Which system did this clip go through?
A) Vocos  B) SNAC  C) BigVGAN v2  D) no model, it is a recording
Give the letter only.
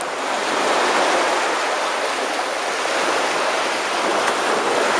D